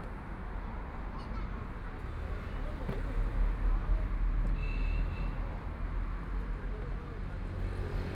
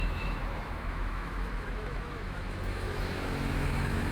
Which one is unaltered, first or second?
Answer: first